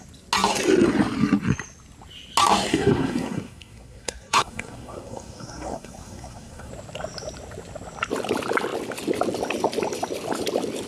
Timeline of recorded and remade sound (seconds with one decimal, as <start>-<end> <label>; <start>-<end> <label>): 0.0-2.7 recorded; 2.7-6.7 remade; 6.7-10.9 recorded